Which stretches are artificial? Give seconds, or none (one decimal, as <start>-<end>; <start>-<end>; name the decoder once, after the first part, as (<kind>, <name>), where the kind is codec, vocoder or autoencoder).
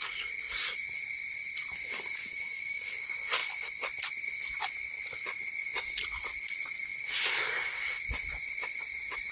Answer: 1.8-2.9 (codec, DAC)